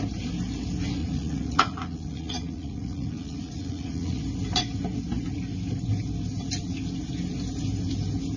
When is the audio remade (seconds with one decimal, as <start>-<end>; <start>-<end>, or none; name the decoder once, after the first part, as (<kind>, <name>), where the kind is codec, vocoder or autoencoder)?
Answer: 1.0-4.2 (vocoder, Vocos)